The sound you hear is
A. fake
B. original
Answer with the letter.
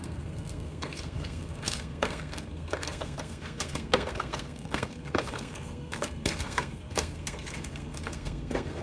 A